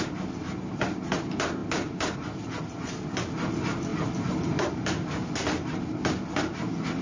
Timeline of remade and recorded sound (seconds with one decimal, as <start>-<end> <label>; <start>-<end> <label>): 0.0-1.6 recorded; 1.6-3.5 remade; 3.5-3.9 recorded; 3.9-4.7 remade; 4.7-7.0 recorded